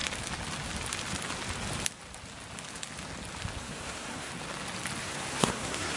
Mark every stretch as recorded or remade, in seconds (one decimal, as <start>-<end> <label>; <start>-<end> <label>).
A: 0.0-3.6 recorded; 3.6-4.3 remade; 4.3-5.0 recorded; 5.0-6.0 remade